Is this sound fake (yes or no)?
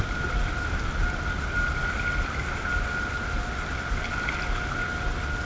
no